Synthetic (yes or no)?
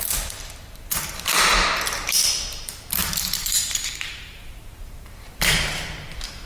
yes